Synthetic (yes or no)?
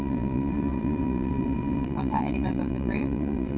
yes